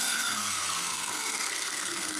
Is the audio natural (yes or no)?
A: no